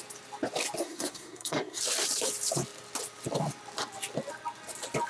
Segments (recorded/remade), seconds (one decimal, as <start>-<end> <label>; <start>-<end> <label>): 0.0-0.8 recorded; 0.8-1.8 remade; 1.8-5.1 recorded